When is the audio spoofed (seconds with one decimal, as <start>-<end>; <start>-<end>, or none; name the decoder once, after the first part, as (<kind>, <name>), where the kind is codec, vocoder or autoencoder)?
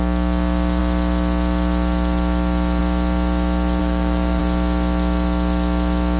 3.8-4.4 (codec, DAC)